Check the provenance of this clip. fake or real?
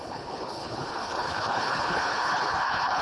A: fake